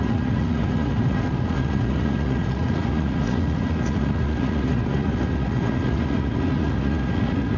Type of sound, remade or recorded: remade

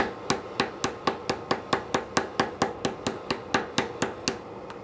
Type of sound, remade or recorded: recorded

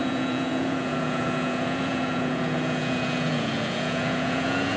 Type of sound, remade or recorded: remade